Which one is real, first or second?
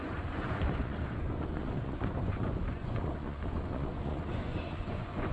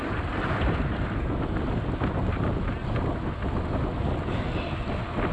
second